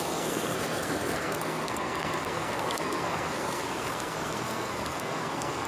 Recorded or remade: remade